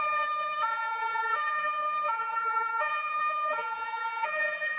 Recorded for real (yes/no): no